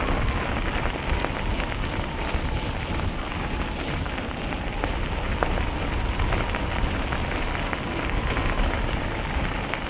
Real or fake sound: real